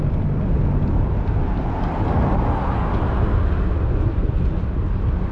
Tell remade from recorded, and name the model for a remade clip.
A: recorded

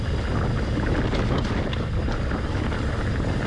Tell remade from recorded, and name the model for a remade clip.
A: recorded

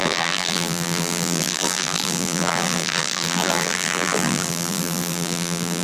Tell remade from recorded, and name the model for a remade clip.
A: remade, vocoder, BigVGAN v2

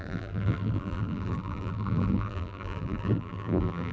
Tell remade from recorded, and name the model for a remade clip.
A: remade, vocoder, BigVGAN v2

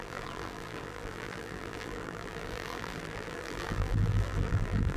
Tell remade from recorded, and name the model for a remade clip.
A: remade, vocoder, BigVGAN v2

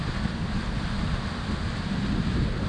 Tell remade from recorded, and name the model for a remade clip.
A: recorded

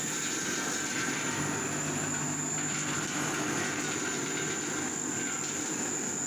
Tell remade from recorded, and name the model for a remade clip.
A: recorded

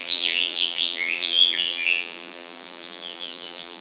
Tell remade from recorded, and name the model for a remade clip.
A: remade, vocoder, BigVGAN v2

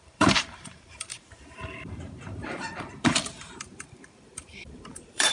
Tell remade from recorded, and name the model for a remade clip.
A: remade, vocoder, BigVGAN v2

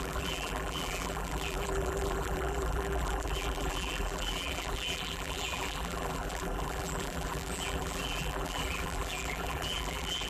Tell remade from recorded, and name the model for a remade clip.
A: remade, vocoder, BigVGAN v2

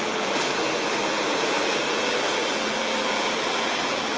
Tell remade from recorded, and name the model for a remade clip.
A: remade, vocoder, BigVGAN v2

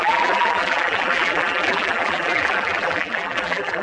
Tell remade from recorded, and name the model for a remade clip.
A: remade, vocoder, BigVGAN v2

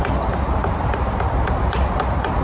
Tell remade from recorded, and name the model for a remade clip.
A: recorded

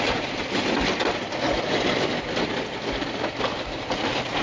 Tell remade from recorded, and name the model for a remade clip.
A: remade, vocoder, BigVGAN v2